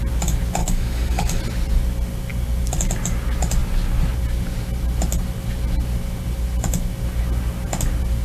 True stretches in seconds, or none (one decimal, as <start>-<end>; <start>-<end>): 0.0-0.6; 1.4-8.2